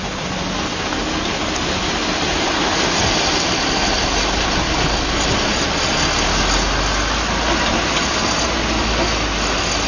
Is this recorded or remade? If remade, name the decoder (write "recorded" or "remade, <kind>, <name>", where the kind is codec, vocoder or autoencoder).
recorded